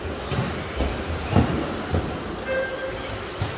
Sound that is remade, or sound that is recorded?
recorded